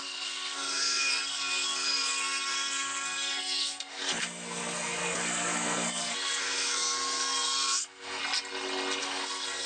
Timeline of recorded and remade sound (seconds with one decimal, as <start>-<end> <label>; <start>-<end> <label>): 0.0-8.2 remade; 8.2-9.0 recorded; 9.0-9.7 remade